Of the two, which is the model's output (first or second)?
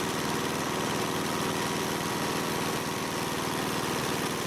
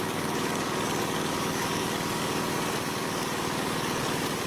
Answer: second